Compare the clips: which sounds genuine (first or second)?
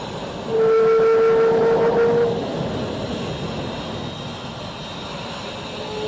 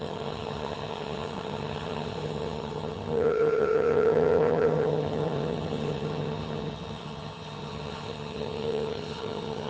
first